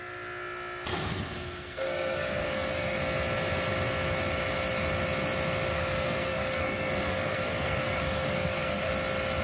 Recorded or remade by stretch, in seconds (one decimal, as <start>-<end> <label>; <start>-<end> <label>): 0.0-0.9 recorded; 0.9-3.0 remade; 3.0-5.7 recorded; 5.7-8.9 remade; 8.9-9.4 recorded